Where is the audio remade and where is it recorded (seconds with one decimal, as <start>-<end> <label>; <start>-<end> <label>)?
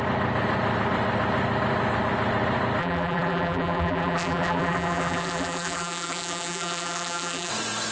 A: 0.0-2.8 recorded; 2.8-7.5 remade; 7.5-7.9 recorded